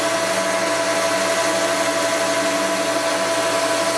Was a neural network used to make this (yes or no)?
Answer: no